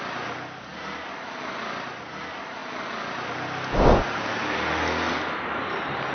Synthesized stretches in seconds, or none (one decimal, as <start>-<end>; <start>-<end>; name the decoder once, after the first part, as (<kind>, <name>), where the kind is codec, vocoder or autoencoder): none